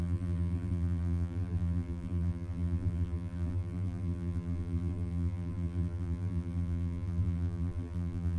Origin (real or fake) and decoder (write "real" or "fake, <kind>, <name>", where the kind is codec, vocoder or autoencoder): fake, vocoder, BigVGAN v2